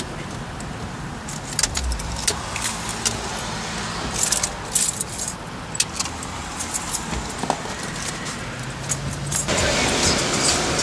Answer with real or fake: real